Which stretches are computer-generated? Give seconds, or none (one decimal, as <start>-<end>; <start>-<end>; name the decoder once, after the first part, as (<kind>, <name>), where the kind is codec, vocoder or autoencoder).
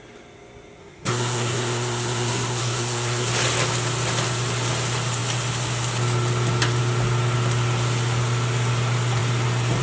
0.8-3.3 (codec, SNAC)